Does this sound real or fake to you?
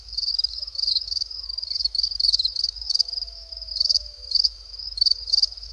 fake